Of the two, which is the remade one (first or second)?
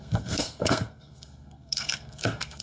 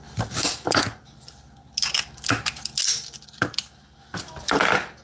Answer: first